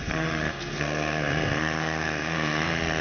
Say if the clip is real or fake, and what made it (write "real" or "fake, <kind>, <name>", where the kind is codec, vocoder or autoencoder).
fake, codec, SNAC